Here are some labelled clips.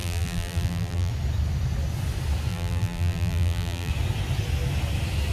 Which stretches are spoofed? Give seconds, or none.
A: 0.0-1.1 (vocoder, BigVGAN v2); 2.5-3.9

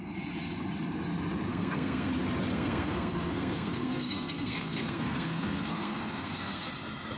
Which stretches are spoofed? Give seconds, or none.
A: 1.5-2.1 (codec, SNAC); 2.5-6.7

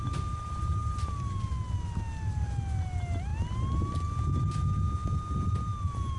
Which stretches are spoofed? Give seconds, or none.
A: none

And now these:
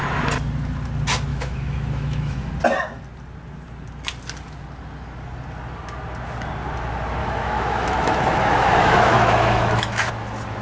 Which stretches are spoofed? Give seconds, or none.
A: 1.3-2.5 (autoencoder, DAC-VAE); 7.2-10.1

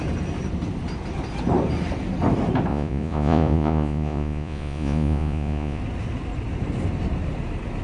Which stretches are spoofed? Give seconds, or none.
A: 2.7-5.8 (vocoder, Vocos)